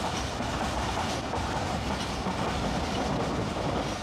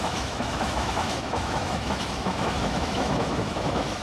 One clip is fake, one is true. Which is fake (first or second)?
second